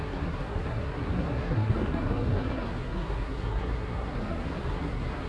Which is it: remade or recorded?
remade